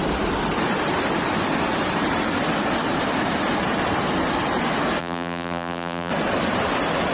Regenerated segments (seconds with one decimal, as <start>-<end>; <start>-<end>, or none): 5.0-6.1